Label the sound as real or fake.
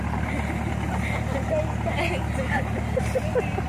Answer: real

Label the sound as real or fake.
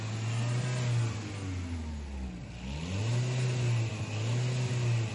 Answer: real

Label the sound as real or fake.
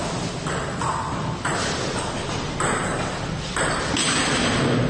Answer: real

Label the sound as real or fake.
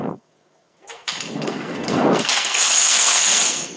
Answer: fake